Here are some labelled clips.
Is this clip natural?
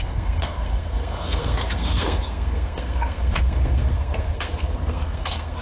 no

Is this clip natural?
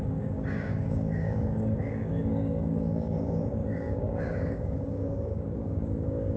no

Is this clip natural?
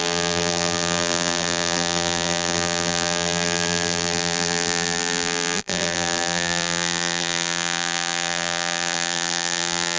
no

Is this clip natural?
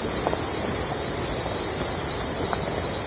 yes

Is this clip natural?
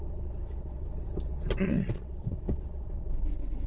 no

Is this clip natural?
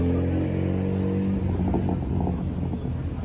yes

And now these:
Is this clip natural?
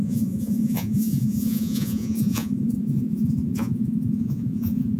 no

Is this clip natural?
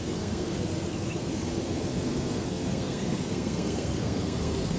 no